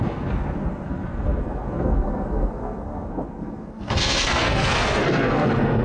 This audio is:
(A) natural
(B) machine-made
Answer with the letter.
B